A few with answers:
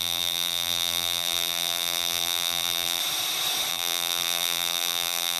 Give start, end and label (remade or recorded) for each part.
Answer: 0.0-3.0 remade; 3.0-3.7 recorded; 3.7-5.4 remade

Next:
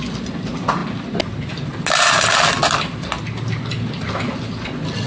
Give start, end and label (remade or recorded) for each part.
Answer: 0.0-5.1 recorded

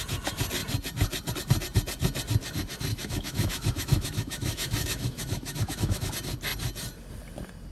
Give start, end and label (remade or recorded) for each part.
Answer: 0.0-2.9 recorded; 2.9-6.1 remade; 6.1-7.7 recorded